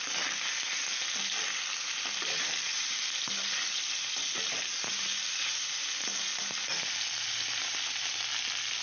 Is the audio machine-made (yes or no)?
no